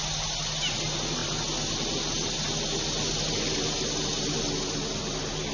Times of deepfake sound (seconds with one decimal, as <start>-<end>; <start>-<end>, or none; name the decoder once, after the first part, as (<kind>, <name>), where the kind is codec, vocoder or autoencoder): none